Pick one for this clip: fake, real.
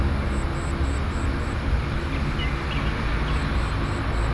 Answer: real